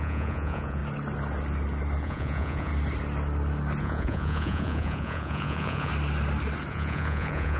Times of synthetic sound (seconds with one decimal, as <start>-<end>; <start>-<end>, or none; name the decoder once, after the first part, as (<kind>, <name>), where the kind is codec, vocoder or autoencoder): 0.0-0.8 (vocoder, Vocos); 2.0-2.7; 3.8-5.9; 6.7-7.6